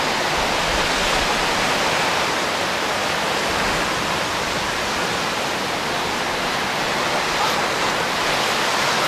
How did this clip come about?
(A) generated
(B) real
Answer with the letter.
B